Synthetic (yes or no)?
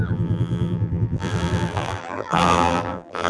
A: yes